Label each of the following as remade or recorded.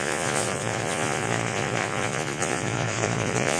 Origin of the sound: remade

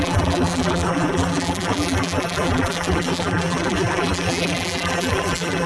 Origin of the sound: remade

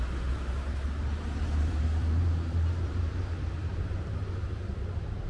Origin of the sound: remade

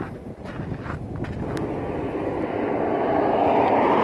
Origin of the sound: recorded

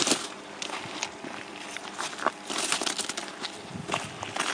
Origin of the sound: recorded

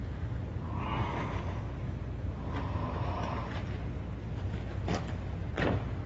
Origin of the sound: recorded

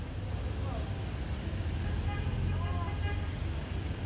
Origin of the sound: recorded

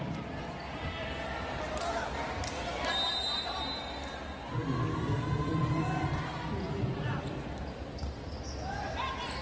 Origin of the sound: recorded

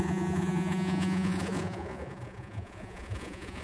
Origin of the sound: remade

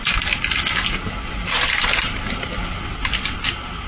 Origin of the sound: remade